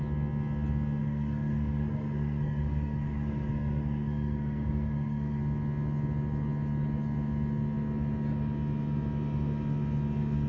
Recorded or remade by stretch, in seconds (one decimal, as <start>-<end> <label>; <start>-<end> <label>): 0.0-1.0 recorded; 1.0-5.4 remade; 5.4-10.5 recorded

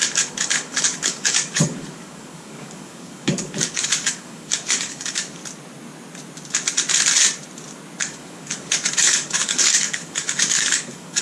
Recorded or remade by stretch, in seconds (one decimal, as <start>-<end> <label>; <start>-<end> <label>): 0.0-5.4 remade; 5.4-8.0 recorded; 8.0-11.2 remade

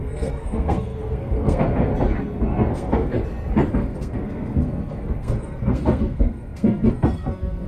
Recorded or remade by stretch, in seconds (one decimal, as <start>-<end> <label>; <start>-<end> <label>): 0.0-1.9 remade; 1.9-2.4 recorded; 2.4-3.1 remade; 3.1-3.7 recorded; 3.7-7.7 remade

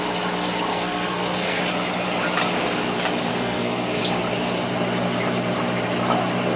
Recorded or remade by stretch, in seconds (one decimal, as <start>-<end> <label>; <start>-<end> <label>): 0.0-0.7 recorded; 0.7-1.6 remade; 1.6-3.3 recorded; 3.3-4.0 remade; 4.0-6.6 recorded

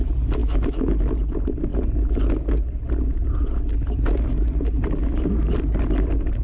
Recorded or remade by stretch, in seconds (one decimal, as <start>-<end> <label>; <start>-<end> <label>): 0.0-0.4 recorded; 0.4-1.0 remade; 1.0-6.4 recorded